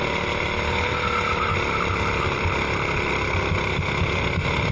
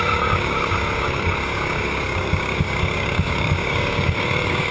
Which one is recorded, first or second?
first